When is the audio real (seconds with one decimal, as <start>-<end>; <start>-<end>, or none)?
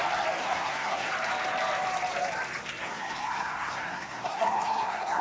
0.0-0.4; 1.1-2.8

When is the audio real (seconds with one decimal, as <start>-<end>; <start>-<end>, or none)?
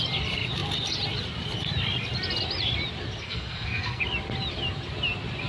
0.0-3.2; 4.0-5.5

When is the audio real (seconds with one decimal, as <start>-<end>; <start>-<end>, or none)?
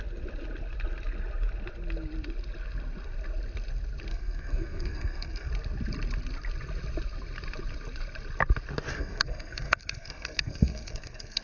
0.0-4.1; 5.5-8.9